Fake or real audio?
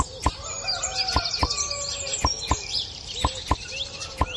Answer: real